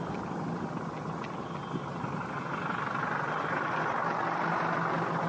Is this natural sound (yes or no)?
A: yes